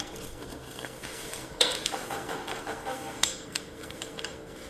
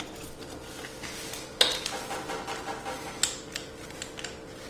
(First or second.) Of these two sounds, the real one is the second